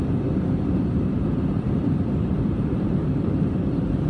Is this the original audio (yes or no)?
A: no